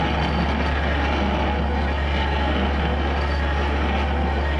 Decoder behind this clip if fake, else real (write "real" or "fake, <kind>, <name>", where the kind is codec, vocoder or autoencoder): real